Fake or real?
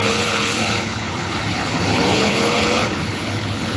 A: fake